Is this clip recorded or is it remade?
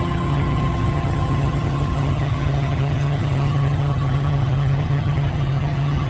remade